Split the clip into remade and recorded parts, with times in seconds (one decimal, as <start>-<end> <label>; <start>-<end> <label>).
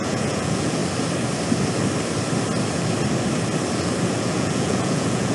0.0-0.8 remade; 0.8-4.0 recorded; 4.0-5.3 remade